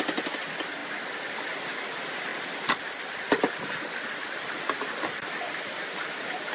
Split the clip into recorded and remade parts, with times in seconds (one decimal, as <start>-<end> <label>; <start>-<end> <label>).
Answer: 0.0-6.5 recorded